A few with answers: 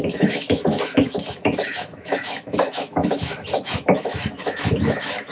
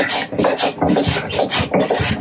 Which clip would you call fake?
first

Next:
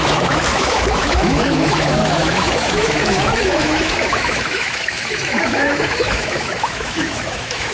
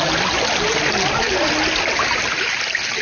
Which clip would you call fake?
first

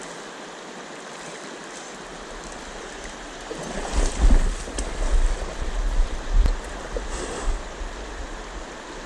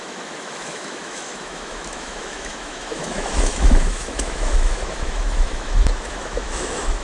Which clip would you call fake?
second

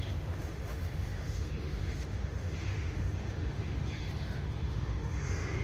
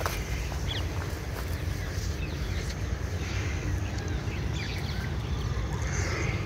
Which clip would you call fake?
first